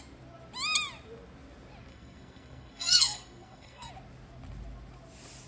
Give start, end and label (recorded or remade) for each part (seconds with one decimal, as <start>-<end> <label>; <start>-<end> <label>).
0.0-1.9 recorded; 1.9-3.9 remade; 3.9-5.5 recorded